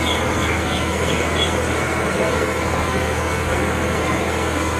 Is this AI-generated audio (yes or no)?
yes